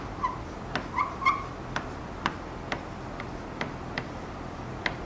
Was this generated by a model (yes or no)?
no